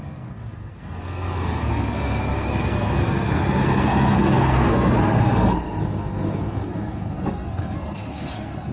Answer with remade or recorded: remade